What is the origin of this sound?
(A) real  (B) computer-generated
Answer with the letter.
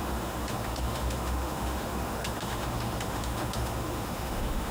B